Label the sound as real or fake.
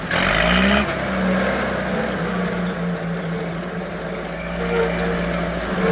real